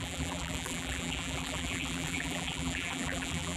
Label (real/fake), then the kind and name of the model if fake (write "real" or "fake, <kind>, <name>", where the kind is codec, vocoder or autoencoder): fake, vocoder, BigVGAN v2